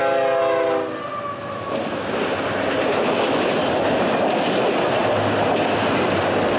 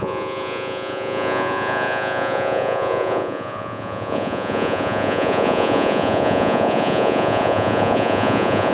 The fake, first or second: second